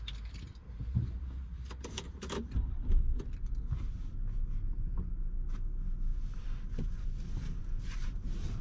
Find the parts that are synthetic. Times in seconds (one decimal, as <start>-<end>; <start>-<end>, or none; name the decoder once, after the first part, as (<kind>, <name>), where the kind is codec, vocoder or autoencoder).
0.6-3.0 (vocoder, BigVGAN v2)